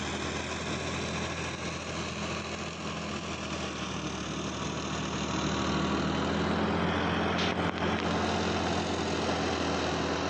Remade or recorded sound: recorded